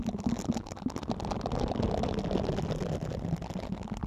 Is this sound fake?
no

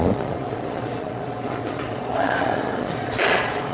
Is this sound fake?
yes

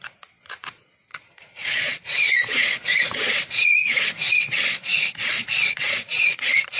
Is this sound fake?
yes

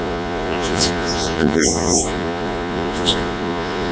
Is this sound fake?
yes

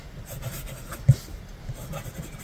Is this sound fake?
no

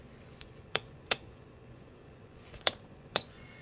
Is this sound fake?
yes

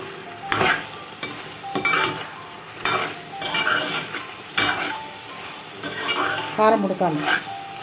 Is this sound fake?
no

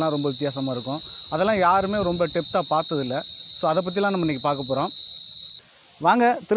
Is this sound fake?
no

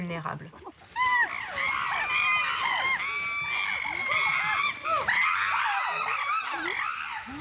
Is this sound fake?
no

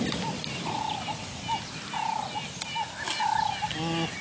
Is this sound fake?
no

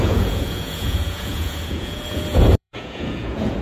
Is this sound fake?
yes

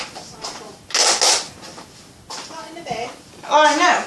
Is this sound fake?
no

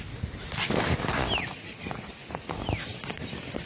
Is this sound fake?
no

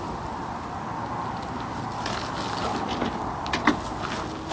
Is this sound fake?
no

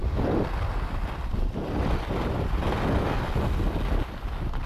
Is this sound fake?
no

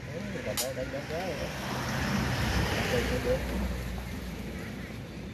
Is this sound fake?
no